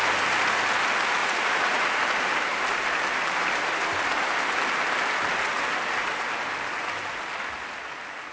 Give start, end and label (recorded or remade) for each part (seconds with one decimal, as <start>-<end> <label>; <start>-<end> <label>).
0.0-1.2 recorded; 1.2-1.9 remade; 1.9-8.3 recorded